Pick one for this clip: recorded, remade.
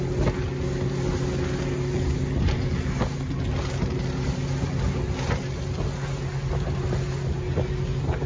recorded